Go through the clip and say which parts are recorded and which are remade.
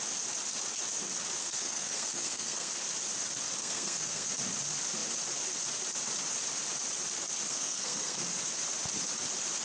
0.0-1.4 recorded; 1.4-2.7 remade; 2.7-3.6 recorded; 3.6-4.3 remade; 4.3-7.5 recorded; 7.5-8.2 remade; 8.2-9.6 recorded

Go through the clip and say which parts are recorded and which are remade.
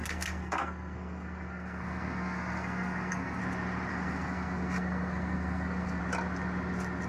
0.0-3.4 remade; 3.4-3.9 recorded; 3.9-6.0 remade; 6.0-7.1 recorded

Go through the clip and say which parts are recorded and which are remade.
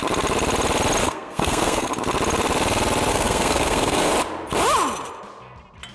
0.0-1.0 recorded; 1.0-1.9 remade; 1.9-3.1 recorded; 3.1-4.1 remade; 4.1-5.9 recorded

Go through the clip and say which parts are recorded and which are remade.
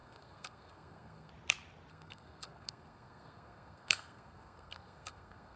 0.0-1.3 remade; 1.3-1.9 recorded; 1.9-5.6 remade